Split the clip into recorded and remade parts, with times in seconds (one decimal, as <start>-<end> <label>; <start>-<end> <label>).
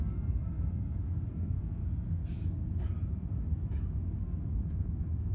0.0-2.2 remade; 2.2-4.4 recorded; 4.4-5.3 remade